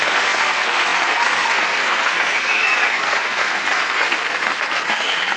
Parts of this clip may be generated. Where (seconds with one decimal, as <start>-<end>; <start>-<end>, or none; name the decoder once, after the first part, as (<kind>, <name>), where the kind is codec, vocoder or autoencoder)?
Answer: 0.0-5.4 (codec, SNAC)